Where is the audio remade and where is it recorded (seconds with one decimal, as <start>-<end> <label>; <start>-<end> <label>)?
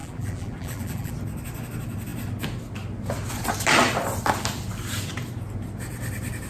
0.0-1.1 remade; 1.1-6.5 recorded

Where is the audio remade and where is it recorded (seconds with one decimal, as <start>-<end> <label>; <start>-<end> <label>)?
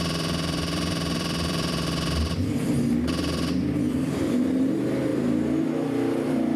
0.0-6.6 remade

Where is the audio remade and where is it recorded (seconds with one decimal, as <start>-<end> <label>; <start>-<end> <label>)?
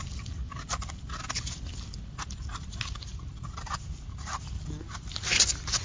0.0-3.1 recorded; 3.1-4.4 remade; 4.4-5.8 recorded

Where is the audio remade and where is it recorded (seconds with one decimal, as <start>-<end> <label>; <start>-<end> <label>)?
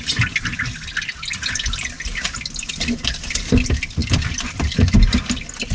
0.0-5.7 recorded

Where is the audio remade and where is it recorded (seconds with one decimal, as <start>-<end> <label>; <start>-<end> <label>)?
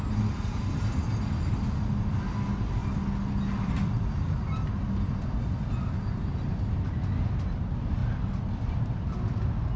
0.0-9.8 recorded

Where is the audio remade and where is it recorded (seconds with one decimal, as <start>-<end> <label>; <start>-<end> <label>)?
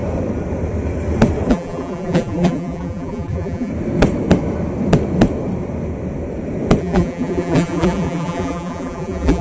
0.0-1.5 recorded; 1.5-3.7 remade; 3.7-6.8 recorded; 6.8-9.4 remade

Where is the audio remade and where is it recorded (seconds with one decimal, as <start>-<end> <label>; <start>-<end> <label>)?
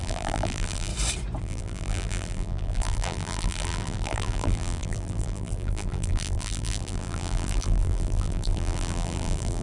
0.0-0.9 remade; 0.9-1.4 recorded; 1.4-9.6 remade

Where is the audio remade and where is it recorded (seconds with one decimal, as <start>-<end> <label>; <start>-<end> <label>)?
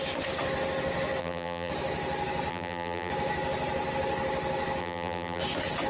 0.0-1.2 recorded; 1.2-1.7 remade; 1.7-2.5 recorded; 2.5-3.1 remade; 3.1-4.8 recorded; 4.8-5.4 remade; 5.4-5.9 recorded